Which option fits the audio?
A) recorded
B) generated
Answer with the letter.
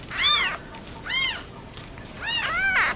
A